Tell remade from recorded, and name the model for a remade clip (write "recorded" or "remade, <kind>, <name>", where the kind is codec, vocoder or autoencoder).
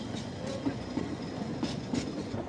remade, vocoder, Vocos